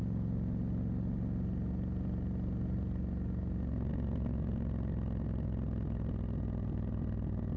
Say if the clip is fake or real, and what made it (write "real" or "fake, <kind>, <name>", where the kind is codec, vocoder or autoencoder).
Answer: real